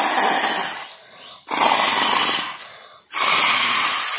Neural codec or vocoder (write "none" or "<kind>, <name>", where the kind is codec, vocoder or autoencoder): none